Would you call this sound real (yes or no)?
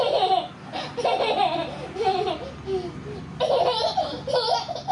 yes